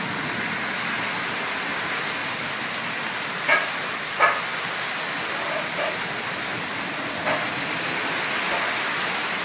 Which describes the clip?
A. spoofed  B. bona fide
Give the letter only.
B